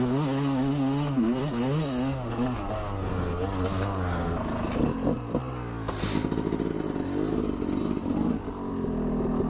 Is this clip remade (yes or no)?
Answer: no